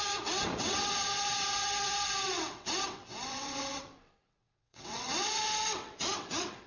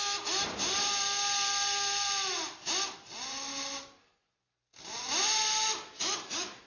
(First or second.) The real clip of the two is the second